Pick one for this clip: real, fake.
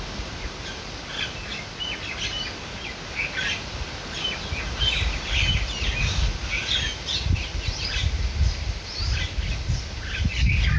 real